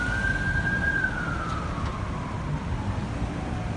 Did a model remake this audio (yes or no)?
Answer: no